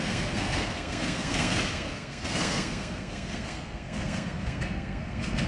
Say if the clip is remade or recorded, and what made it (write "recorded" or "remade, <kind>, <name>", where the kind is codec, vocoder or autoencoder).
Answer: remade, codec, SNAC